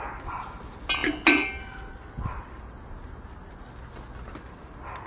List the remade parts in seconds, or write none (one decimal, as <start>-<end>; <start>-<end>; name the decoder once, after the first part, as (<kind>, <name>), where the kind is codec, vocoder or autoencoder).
none